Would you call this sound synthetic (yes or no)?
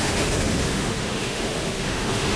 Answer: yes